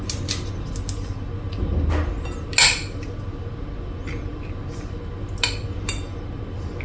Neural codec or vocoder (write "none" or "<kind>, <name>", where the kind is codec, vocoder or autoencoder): none